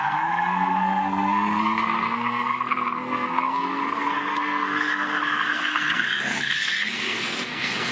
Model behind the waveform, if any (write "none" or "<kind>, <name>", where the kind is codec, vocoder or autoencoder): codec, SNAC